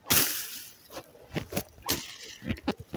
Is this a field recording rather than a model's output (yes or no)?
yes